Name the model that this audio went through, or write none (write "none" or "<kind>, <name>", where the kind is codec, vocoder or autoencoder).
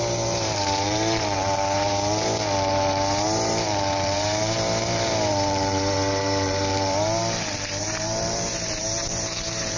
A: vocoder, BigVGAN v2